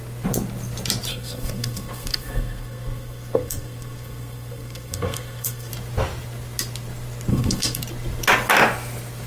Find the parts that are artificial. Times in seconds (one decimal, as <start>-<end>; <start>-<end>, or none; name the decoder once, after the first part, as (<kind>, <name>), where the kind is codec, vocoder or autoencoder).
1.1-5.7 (codec, SNAC); 7.3-7.8